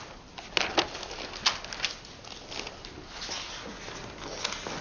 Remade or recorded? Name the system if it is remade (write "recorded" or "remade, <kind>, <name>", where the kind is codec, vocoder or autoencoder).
recorded